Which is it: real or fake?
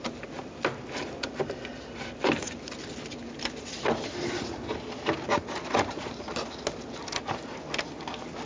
real